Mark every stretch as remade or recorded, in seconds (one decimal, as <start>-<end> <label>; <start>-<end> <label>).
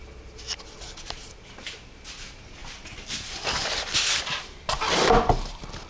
0.0-5.9 recorded